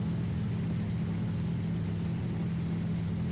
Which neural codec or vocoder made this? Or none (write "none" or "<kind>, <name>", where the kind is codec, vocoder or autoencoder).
none